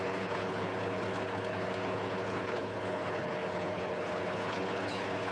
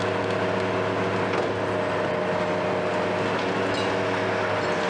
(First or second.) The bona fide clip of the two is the second